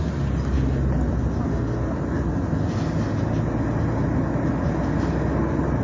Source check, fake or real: real